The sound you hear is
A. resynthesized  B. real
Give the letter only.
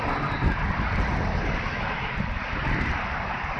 B